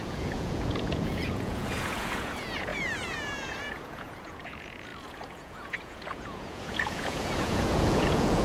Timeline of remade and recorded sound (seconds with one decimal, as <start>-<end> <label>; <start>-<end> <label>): 0.0-8.4 remade